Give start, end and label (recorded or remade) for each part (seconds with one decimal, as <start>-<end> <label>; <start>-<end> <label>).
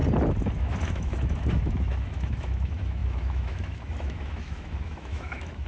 0.0-0.6 recorded; 0.6-5.7 remade